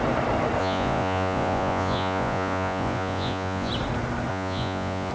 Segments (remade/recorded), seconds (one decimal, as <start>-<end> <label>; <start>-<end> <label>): 0.0-0.6 recorded; 0.6-3.7 remade; 3.7-4.3 recorded; 4.3-5.1 remade